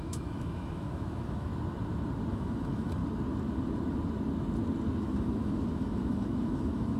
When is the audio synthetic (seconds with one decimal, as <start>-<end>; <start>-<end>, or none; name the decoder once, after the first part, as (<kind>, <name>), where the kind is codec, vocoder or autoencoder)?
0.0-1.5 (autoencoder, DAC-VAE); 2.3-3.0; 5.0-7.0